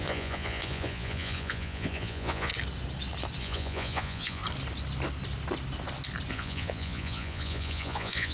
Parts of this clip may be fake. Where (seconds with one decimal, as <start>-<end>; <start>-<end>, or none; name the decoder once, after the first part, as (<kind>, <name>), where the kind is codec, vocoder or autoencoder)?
0.0-2.5 (vocoder, Vocos); 3.4-4.4; 6.3-8.3

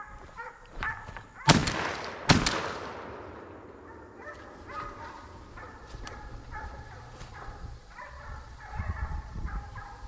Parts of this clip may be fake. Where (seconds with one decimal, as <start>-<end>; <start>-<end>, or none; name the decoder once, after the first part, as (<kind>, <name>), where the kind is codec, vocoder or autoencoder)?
5.8-9.5 (vocoder, Vocos)

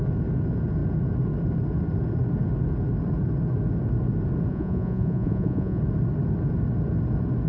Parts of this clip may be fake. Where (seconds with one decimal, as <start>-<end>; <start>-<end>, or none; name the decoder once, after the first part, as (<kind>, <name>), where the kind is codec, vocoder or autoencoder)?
4.5-5.8 (vocoder, Vocos)

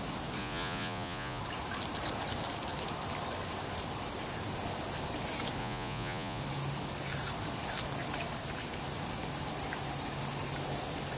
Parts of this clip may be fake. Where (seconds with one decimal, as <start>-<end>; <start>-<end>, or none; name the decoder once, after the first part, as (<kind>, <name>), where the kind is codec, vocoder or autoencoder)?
0.4-1.4 (vocoder, Vocos); 5.6-6.4

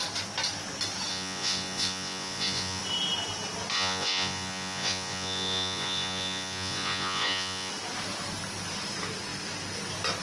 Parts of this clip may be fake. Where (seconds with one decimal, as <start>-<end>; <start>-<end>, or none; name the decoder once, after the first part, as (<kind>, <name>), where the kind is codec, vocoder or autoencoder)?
1.1-2.8 (vocoder, Vocos); 3.7-7.7

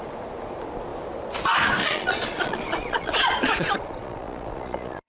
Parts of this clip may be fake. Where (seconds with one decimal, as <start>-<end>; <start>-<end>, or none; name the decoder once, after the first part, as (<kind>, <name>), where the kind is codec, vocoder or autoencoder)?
1.8-5.1 (vocoder, Vocos)

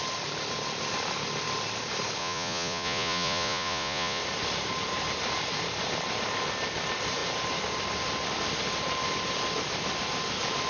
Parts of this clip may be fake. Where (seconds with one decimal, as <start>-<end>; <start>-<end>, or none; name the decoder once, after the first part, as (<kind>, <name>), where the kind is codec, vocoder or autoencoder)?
2.2-4.2 (vocoder, Vocos)

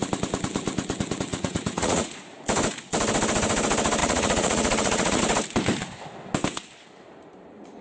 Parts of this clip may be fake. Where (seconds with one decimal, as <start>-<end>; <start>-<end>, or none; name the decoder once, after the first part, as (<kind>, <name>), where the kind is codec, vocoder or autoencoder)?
1.3-2.2 (vocoder, Vocos); 4.0-5.2